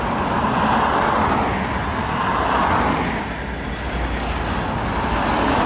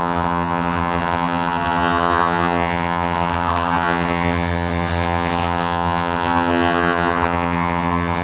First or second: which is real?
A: first